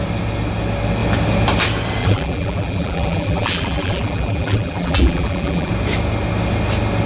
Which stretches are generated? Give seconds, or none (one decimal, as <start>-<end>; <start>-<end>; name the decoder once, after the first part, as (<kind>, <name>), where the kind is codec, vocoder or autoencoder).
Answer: 2.0-5.7 (vocoder, BigVGAN v2)